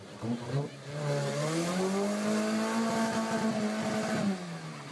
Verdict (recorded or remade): recorded